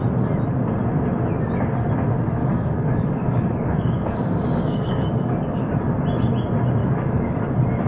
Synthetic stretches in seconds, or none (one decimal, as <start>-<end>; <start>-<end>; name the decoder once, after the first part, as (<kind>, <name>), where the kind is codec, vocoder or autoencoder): 2.4-5.7 (codec, DAC); 6.8-7.4